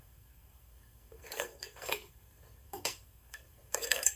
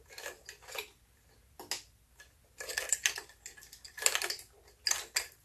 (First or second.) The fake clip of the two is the first